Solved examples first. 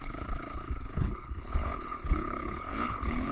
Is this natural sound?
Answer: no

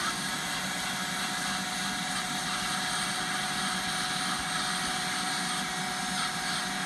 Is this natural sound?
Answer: yes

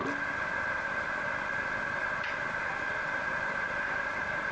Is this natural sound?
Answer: yes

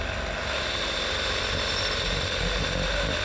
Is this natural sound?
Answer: yes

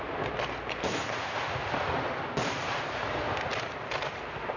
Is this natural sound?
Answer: yes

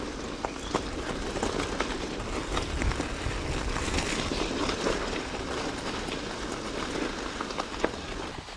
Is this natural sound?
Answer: yes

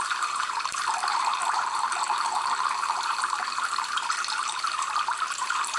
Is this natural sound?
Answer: no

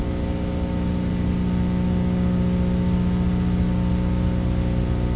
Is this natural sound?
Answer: yes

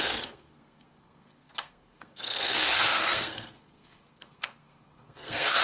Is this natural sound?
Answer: no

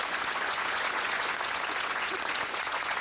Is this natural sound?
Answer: no